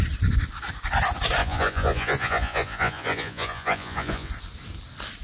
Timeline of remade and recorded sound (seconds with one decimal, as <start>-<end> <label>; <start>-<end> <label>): 0.0-1.4 recorded; 1.4-4.3 remade; 4.3-5.2 recorded